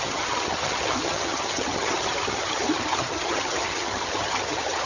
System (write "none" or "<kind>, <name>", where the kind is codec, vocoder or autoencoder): vocoder, HiFi-GAN